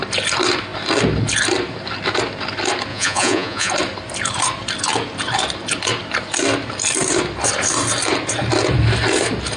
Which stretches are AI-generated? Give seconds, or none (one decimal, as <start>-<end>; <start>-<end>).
2.9-3.7